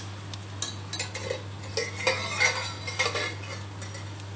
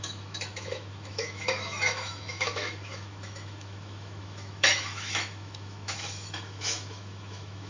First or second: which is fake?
second